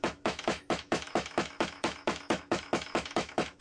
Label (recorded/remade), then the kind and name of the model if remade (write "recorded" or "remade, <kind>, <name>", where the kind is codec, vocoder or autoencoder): remade, autoencoder, DAC-VAE